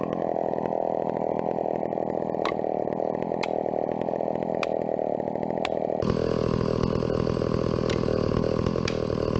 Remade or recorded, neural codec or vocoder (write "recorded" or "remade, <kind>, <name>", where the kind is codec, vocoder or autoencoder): recorded